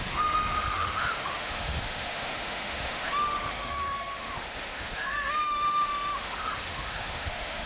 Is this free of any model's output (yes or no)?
no